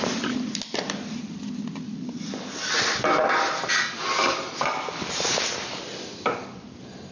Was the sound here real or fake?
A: real